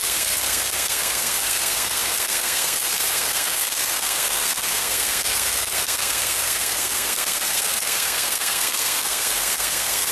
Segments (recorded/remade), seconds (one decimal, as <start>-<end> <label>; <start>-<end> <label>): 0.0-10.1 remade